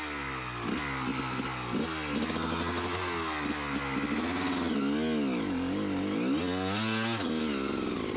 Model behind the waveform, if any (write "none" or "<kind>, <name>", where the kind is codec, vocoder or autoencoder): none